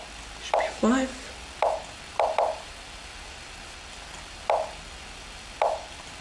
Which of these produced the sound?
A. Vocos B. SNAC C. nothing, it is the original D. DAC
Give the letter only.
C